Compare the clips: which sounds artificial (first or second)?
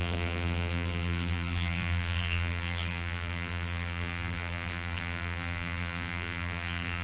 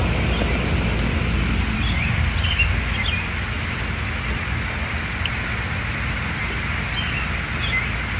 first